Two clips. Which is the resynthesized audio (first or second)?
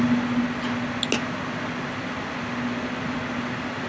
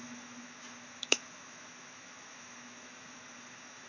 second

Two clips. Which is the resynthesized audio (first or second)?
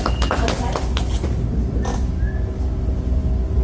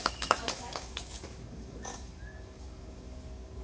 second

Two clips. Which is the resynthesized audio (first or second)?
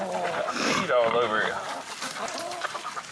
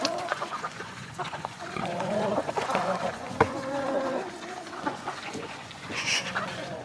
second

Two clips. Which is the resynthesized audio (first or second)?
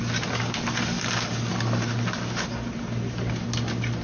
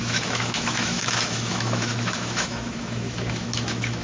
second